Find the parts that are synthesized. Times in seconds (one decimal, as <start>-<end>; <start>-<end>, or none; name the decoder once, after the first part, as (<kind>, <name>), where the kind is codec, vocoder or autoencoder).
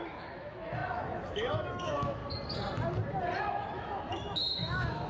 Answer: 0.0-2.2 (autoencoder, DAC-VAE); 3.4-5.1